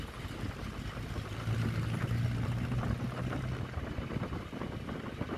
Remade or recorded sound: recorded